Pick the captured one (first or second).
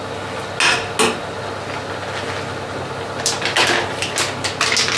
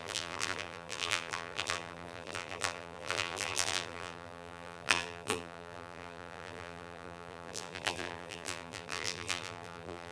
first